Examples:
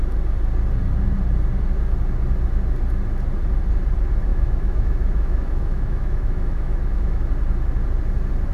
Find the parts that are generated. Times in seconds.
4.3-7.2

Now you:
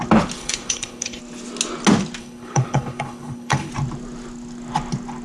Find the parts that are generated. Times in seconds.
0.4-1.2; 2.2-3.7

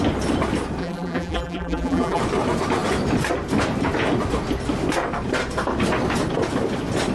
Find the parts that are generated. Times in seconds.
0.8-2.2

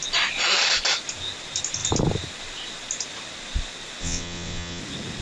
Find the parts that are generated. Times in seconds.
4.0-4.8

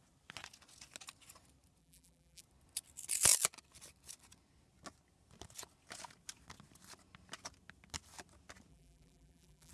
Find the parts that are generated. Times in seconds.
1.8-2.4; 8.7-9.7

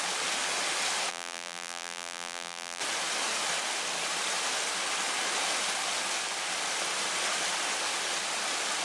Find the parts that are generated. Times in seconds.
1.1-2.8

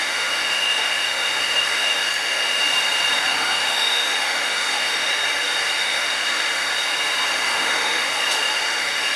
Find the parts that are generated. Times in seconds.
0.0-2.6; 3.3-5.1; 5.8-6.7; 7.3-9.2